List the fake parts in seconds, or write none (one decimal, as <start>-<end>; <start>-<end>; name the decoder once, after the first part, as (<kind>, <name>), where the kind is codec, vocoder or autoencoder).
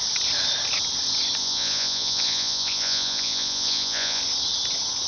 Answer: 1.4-4.2 (vocoder, Vocos)